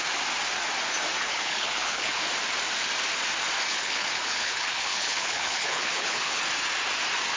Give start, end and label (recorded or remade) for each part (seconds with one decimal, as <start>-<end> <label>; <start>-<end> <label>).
0.0-1.2 recorded; 1.2-2.2 remade; 2.2-3.7 recorded; 3.7-6.4 remade; 6.4-7.4 recorded